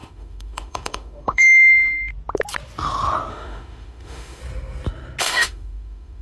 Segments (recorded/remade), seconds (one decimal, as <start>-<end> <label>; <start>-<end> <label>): 0.0-2.1 remade; 2.1-3.3 recorded; 3.3-4.4 remade; 4.4-5.2 recorded; 5.2-6.2 remade